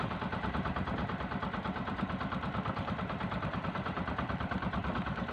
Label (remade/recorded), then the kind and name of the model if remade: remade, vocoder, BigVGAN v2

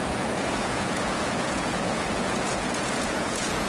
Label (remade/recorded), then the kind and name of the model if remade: remade, vocoder, Vocos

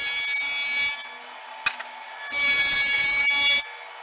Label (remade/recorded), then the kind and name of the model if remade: recorded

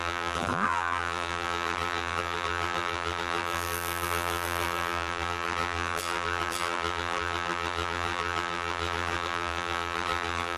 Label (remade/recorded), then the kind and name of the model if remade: remade, vocoder, BigVGAN v2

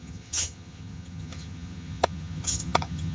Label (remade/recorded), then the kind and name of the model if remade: remade, vocoder, HiFi-GAN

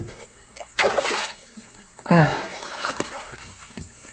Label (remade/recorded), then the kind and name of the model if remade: remade, codec, SNAC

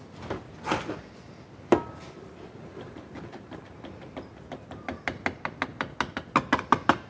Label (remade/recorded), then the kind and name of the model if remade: recorded